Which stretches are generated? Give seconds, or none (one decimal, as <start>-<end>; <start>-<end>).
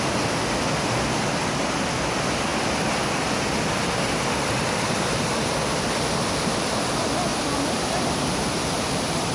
7.3-8.7